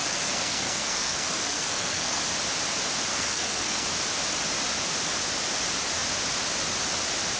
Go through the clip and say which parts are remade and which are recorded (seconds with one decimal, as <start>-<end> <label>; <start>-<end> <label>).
0.0-2.2 remade; 2.2-3.1 recorded; 3.1-3.9 remade; 3.9-7.4 recorded